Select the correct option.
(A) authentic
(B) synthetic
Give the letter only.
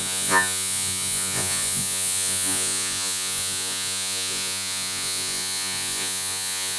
B